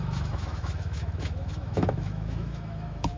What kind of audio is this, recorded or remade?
remade